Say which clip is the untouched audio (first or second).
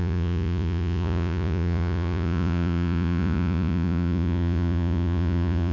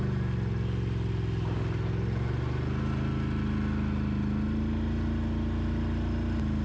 second